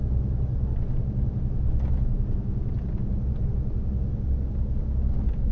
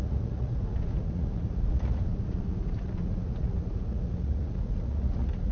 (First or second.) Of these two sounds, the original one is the first